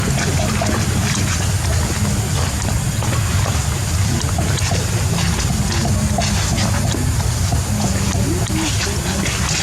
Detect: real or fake real